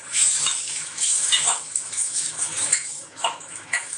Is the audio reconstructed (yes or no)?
yes